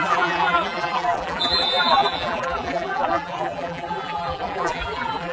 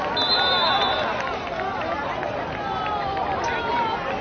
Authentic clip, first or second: second